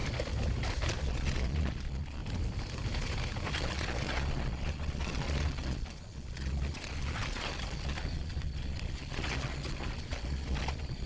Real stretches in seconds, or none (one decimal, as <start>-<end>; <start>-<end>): 0.0-1.0; 2.2-3.5